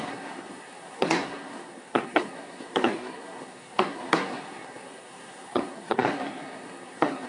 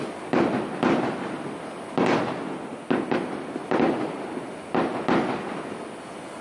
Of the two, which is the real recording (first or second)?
second